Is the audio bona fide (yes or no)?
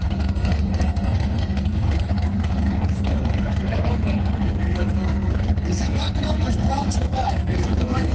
no